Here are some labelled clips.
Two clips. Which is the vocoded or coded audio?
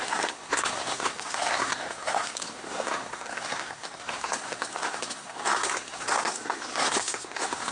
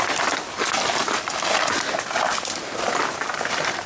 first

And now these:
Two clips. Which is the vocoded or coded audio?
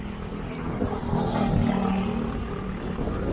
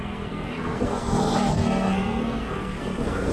second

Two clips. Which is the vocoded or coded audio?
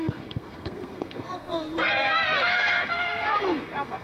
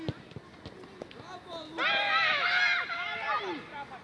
first